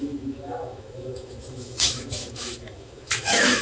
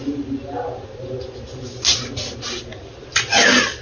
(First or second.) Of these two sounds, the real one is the second